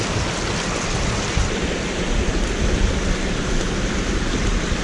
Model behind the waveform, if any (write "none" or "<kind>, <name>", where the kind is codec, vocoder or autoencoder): none